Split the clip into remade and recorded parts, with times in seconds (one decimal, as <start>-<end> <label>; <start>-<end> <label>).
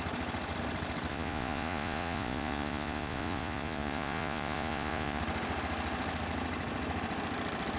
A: 0.0-1.1 recorded; 1.1-5.2 remade; 5.2-7.8 recorded